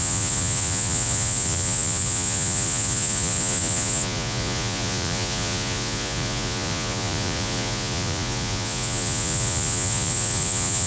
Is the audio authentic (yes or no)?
no